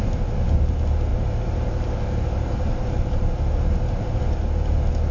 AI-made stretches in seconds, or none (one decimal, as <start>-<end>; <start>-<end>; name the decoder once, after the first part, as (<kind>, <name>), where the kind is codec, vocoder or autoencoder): 1.1-4.2 (vocoder, BigVGAN v2)